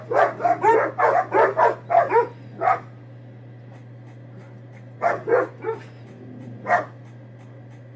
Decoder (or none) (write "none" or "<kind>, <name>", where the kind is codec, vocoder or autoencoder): none